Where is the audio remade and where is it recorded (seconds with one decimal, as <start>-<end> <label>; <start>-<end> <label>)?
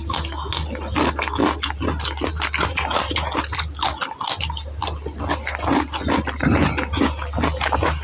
0.0-8.0 recorded